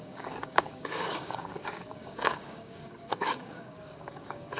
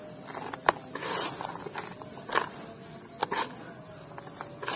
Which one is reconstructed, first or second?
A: first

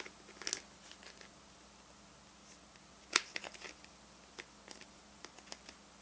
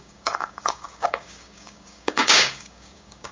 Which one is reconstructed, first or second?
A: second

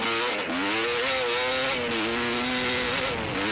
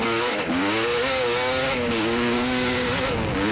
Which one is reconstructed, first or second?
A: second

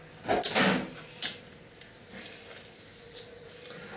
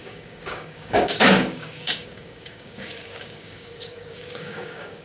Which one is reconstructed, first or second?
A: second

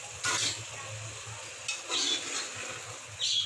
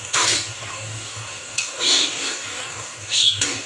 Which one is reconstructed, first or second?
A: second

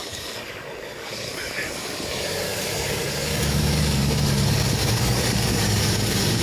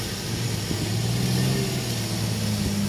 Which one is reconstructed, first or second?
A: first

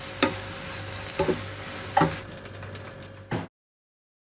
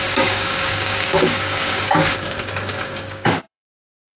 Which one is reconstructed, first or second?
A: second